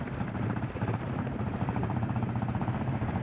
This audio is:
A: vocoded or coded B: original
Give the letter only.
A